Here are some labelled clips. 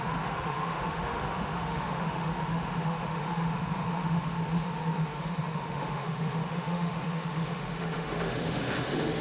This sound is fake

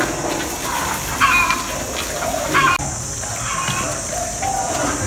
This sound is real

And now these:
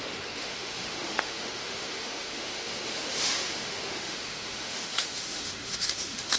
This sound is fake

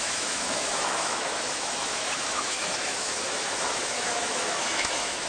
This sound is fake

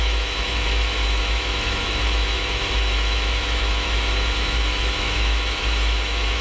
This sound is fake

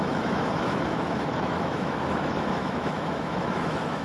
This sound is fake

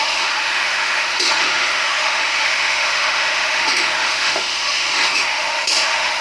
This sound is fake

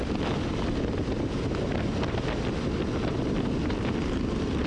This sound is real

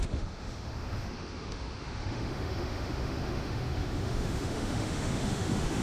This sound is fake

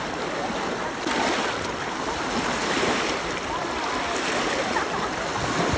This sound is real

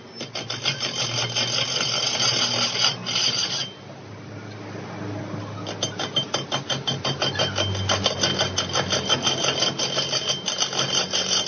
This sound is real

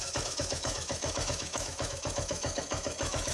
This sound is fake